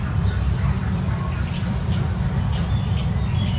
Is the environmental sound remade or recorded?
recorded